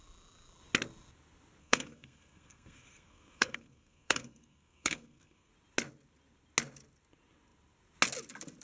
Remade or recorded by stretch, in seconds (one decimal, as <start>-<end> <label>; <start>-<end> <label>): 0.0-1.6 recorded; 1.6-5.5 remade; 5.5-8.6 recorded